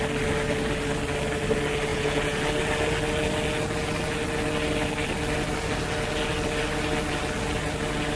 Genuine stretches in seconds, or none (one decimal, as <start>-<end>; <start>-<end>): 0.0-1.9; 2.4-8.2